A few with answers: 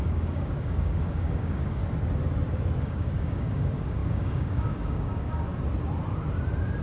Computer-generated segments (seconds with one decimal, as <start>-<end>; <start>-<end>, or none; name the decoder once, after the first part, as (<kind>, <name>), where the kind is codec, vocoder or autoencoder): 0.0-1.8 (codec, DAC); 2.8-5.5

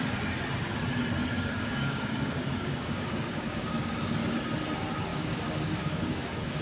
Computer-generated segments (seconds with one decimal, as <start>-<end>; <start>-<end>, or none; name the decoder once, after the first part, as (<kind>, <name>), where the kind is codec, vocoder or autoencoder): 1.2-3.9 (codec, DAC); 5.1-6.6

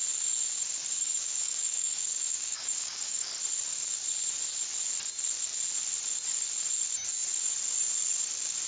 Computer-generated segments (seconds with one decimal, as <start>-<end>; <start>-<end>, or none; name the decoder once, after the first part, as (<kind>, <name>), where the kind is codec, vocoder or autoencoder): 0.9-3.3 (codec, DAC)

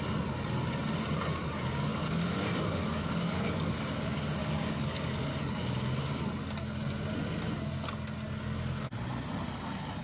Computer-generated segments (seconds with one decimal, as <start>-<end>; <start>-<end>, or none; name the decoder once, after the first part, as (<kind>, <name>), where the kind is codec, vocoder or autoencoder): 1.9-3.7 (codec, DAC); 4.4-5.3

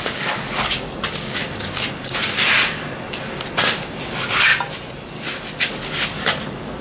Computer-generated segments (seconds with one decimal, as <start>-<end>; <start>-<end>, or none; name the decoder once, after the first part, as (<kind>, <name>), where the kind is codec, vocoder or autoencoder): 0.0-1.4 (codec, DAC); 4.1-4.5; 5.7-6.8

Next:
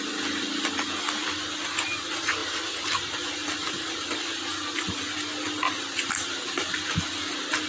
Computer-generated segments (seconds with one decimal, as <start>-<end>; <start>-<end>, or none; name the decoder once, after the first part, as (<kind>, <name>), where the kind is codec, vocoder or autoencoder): none

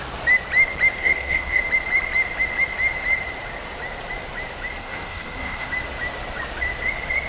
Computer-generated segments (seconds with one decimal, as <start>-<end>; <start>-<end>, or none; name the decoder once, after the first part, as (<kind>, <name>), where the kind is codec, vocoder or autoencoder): 1.0-1.6 (codec, DAC); 4.8-5.7

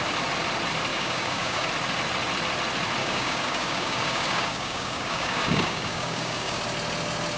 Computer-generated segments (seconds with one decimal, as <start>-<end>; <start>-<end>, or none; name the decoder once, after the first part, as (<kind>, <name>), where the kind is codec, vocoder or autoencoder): 0.9-1.7 (codec, DAC); 3.0-6.6